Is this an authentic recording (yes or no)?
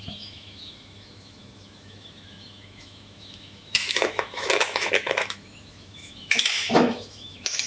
no